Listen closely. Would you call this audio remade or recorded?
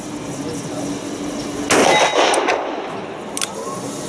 recorded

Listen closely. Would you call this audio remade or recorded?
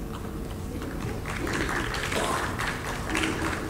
recorded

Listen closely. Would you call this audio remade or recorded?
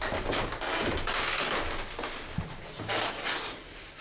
recorded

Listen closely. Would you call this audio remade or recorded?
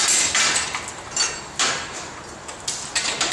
recorded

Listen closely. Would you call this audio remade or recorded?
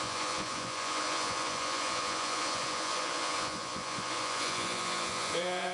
remade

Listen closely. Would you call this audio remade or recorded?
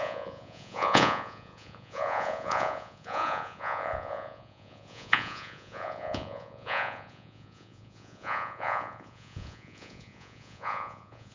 remade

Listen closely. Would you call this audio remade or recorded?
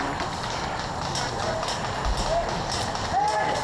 recorded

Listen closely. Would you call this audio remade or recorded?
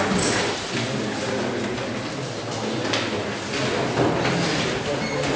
recorded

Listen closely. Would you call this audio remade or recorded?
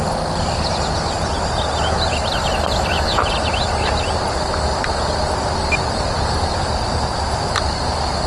recorded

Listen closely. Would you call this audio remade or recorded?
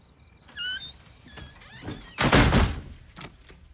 recorded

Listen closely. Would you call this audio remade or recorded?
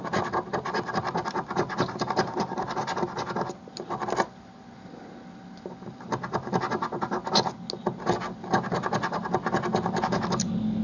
recorded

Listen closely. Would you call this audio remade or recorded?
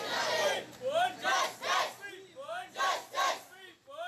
recorded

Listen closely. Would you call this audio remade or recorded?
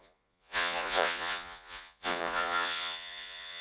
remade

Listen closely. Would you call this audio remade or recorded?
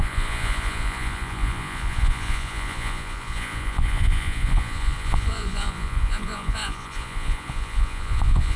remade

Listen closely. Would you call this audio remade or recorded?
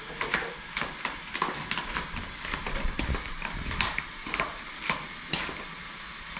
recorded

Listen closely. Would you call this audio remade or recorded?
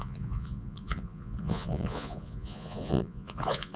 remade